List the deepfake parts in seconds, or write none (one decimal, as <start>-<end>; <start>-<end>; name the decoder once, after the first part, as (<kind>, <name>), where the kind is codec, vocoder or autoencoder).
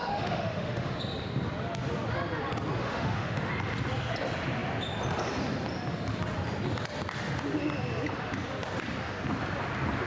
0.0-1.0 (autoencoder, DAC-VAE); 2.8-3.5